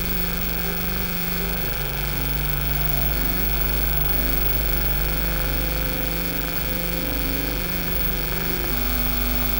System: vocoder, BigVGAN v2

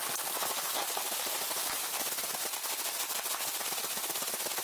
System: none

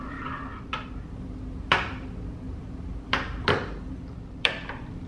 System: vocoder, BigVGAN v2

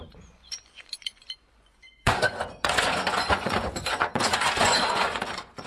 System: vocoder, Vocos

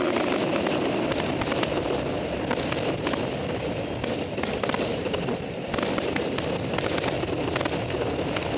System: vocoder, BigVGAN v2